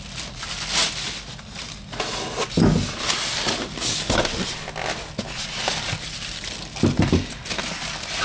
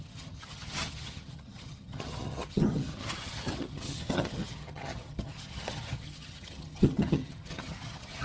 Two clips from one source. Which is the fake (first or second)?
second